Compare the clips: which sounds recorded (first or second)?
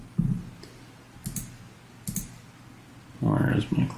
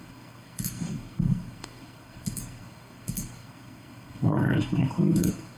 first